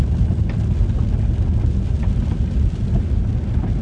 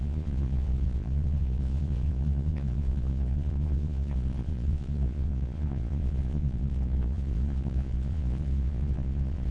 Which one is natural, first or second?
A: first